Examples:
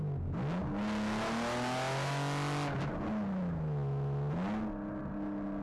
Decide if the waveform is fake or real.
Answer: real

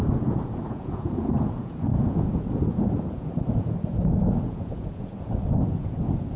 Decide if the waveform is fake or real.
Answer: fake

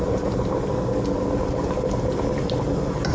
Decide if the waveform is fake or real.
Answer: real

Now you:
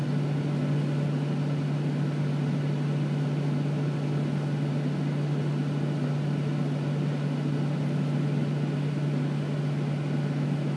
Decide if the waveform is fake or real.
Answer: real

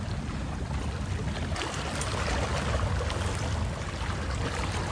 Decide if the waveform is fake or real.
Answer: real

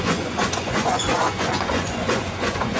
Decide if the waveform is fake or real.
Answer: fake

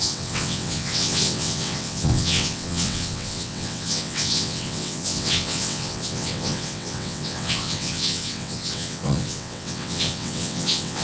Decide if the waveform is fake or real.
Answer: fake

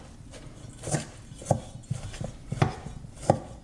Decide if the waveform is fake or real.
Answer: real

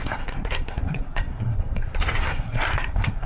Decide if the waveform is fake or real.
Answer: fake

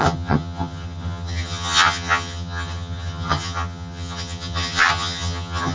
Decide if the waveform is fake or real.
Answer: fake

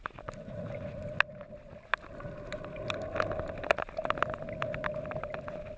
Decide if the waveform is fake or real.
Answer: real